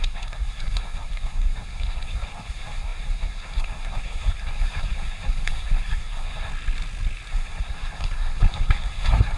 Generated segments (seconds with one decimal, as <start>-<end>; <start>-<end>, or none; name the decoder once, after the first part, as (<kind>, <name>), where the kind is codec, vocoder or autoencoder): 0.0-6.5 (codec, SNAC); 7.3-9.4